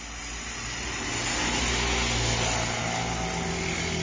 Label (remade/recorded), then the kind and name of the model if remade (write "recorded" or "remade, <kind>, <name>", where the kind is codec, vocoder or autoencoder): recorded